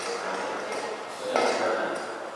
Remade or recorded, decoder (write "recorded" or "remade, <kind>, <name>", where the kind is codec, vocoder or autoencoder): recorded